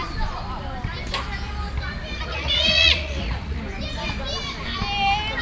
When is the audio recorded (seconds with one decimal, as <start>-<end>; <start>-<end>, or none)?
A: 0.0-2.3; 3.6-5.4